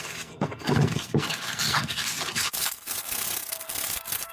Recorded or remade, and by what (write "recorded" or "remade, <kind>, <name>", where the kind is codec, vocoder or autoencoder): remade, codec, SNAC